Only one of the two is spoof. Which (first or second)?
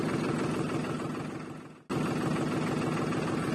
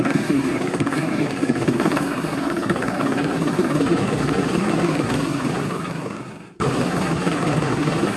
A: second